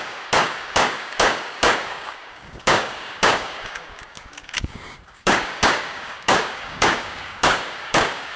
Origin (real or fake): fake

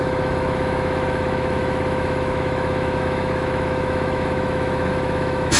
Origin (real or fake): fake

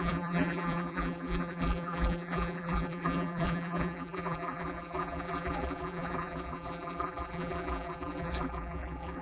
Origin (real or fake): fake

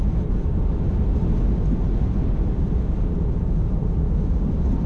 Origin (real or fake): real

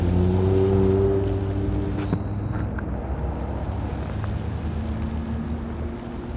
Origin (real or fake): real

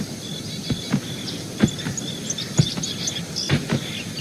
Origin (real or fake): fake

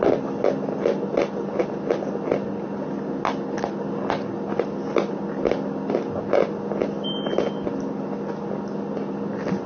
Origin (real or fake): real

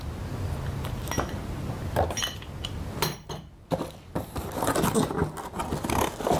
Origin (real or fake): real